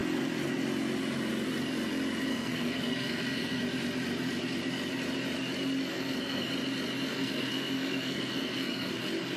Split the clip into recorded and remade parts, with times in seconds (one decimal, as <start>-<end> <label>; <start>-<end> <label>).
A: 0.0-2.3 recorded; 2.3-3.6 remade; 3.6-5.9 recorded; 5.9-6.5 remade; 6.5-7.1 recorded; 7.1-9.0 remade; 9.0-9.4 recorded